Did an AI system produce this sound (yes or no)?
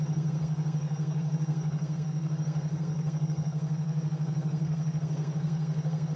yes